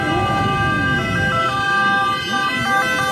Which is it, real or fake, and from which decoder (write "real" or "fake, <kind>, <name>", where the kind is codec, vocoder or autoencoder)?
real